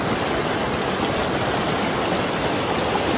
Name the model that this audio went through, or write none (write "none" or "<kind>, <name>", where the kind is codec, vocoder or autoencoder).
none